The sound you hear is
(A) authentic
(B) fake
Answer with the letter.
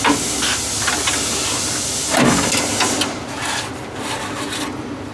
A